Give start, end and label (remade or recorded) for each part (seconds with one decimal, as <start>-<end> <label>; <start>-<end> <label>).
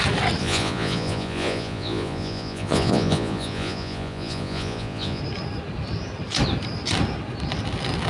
0.0-0.4 recorded; 0.4-5.2 remade; 5.2-8.1 recorded